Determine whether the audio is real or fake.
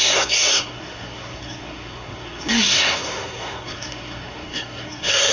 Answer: fake